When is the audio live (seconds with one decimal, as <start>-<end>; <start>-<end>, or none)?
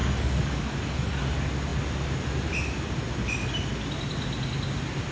1.2-5.1